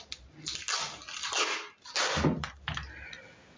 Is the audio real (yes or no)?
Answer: yes